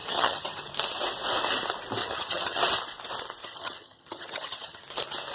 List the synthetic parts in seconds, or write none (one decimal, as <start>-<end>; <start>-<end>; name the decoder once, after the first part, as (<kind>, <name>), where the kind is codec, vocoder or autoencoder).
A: 0.0-0.6 (vocoder, HiFi-GAN); 2.0-2.6; 3.4-4.8